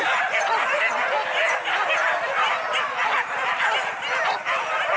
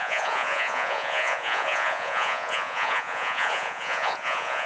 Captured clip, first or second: first